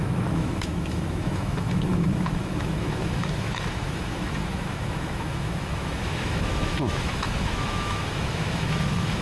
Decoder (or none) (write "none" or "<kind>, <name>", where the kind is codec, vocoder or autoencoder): autoencoder, DAC-VAE